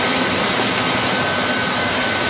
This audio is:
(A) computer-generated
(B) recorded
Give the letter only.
B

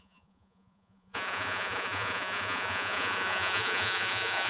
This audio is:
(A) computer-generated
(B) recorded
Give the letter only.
A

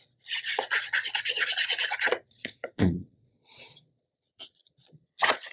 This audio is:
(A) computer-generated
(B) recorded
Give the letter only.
A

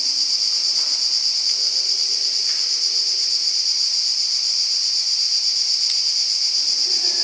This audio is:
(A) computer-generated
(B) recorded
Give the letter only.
B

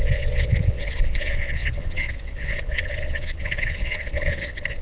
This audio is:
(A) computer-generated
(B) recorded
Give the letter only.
A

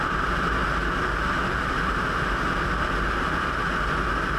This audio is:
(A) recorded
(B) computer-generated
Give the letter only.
A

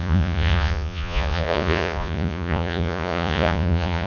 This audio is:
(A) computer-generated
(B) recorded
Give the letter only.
A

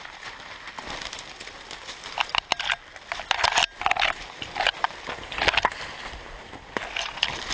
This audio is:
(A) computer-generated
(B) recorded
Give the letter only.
B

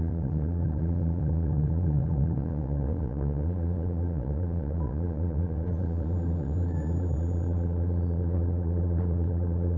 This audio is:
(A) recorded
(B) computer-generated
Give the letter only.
B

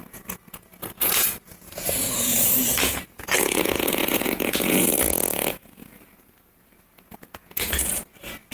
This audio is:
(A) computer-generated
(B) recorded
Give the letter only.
A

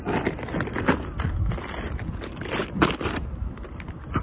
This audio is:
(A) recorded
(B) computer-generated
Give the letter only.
A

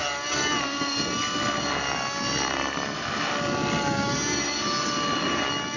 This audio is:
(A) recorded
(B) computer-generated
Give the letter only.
A